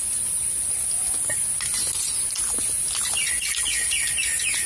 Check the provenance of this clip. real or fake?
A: real